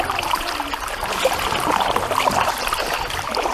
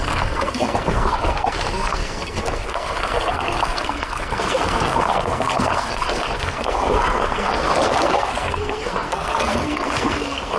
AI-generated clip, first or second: second